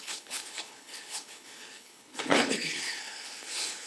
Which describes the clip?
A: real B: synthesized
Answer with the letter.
B